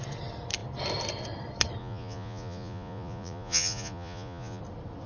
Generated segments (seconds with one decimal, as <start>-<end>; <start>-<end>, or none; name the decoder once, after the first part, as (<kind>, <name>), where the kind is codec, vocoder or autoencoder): 1.8-4.6 (vocoder, Vocos)